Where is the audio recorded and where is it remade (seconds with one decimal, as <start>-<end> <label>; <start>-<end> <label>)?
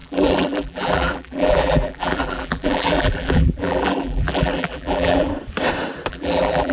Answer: 0.0-5.3 remade; 5.3-6.1 recorded; 6.1-6.7 remade